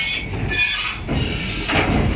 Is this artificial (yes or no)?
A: no